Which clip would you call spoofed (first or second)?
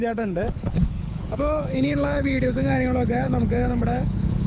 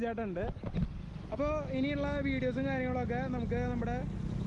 first